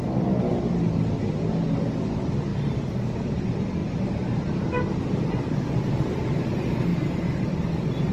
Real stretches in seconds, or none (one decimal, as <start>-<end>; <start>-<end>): 0.0-8.1